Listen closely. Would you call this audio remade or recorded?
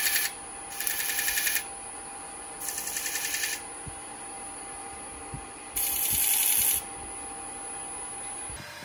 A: recorded